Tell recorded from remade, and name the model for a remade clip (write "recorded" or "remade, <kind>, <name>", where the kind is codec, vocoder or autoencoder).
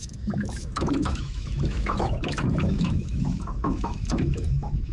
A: remade, autoencoder, DAC-VAE